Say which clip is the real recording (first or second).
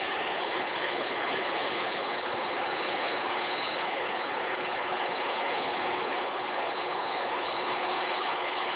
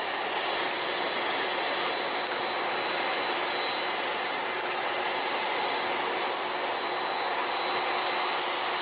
second